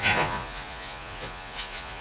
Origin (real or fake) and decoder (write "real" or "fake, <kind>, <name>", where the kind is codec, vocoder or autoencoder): fake, vocoder, Vocos